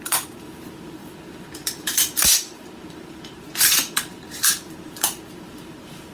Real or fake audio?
fake